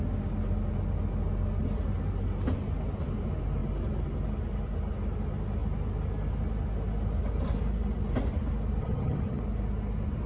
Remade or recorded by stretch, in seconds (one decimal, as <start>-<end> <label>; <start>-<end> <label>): 0.0-8.8 recorded; 8.8-9.4 remade; 9.4-10.3 recorded